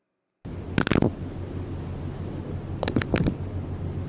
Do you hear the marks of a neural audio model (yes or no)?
no